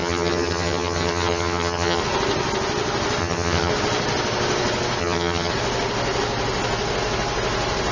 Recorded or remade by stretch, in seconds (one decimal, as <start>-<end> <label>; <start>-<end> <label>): 0.0-2.0 remade; 2.0-3.2 recorded; 3.2-3.7 remade; 3.7-5.0 recorded; 5.0-5.5 remade; 5.5-7.9 recorded